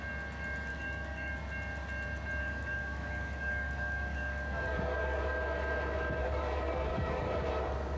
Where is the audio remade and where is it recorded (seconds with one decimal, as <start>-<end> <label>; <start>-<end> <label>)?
0.0-0.7 recorded; 0.7-1.3 remade; 1.3-2.4 recorded; 2.4-5.4 remade; 5.4-6.2 recorded; 6.2-7.5 remade; 7.5-8.0 recorded